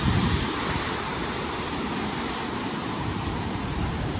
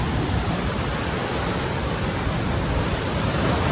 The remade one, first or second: first